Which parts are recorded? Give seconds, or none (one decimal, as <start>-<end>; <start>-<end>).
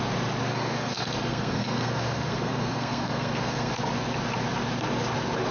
0.0-0.5; 3.8-5.5